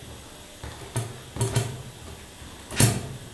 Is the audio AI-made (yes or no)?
no